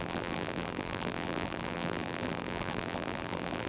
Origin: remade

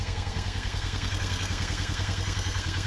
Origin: remade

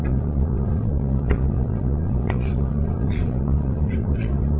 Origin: remade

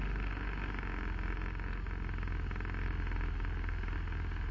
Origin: recorded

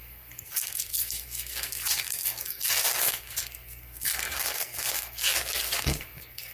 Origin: remade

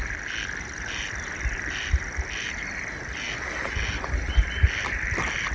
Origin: recorded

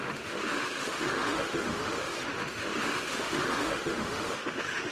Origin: remade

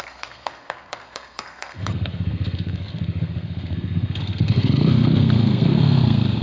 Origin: remade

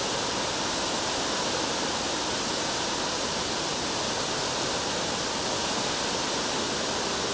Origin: recorded